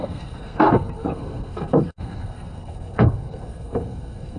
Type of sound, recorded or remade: remade